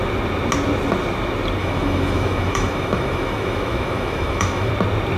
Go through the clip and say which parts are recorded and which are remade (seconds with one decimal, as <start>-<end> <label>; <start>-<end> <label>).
0.0-1.6 recorded; 1.6-4.7 remade; 4.7-5.2 recorded